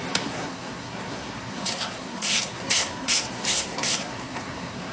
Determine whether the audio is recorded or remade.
remade